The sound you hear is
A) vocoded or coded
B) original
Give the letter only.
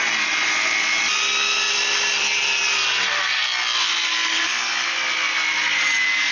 B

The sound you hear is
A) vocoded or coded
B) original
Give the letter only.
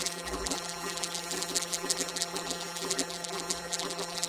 A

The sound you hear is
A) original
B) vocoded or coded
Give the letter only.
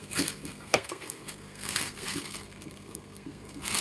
B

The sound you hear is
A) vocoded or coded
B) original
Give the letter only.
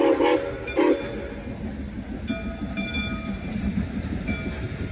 B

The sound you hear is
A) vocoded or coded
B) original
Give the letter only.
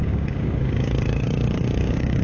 A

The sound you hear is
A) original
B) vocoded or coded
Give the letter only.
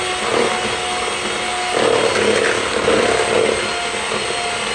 A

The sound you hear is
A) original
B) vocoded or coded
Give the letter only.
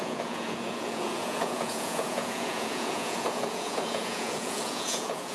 B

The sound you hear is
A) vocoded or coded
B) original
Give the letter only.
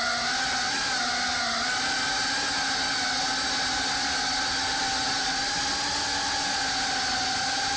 B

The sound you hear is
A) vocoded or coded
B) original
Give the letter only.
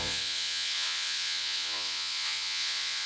A